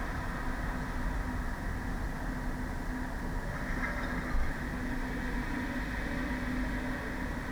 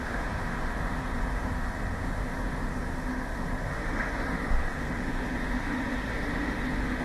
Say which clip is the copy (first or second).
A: second